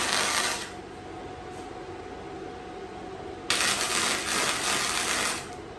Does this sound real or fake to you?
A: real